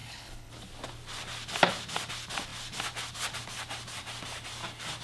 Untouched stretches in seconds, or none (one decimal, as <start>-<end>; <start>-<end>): 0.5-5.0